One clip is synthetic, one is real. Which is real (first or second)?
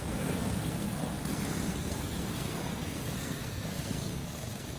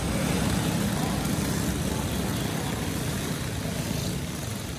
second